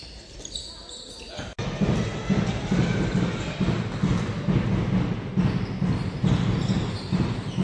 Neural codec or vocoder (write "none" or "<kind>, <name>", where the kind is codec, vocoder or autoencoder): none